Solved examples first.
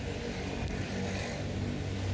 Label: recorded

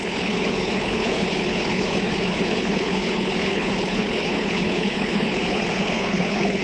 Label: remade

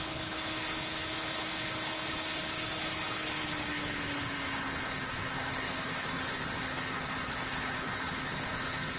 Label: remade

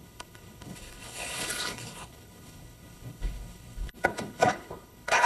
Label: remade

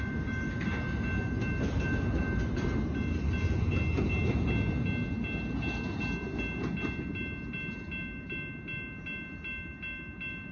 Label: recorded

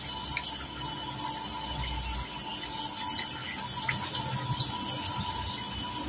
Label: recorded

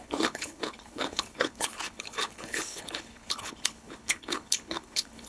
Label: remade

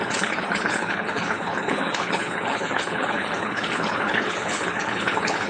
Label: remade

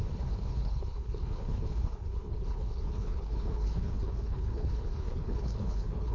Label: remade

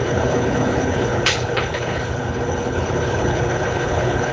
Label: remade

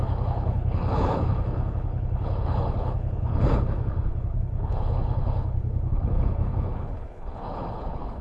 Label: remade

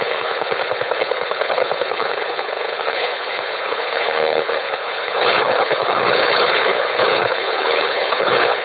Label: remade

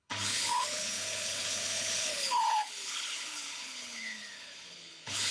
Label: remade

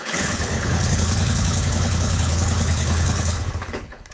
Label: remade